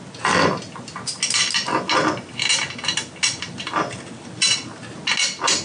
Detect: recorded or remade recorded